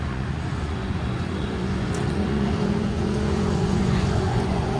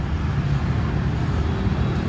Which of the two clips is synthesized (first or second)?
first